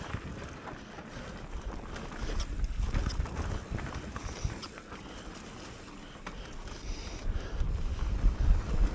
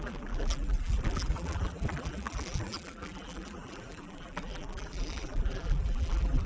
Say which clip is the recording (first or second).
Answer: first